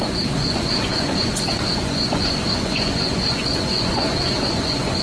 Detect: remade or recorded remade